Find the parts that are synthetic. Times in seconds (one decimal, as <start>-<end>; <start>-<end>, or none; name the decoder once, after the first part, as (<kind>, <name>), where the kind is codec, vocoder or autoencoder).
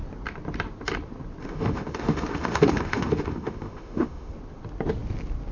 1.4-4.3 (autoencoder, DAC-VAE)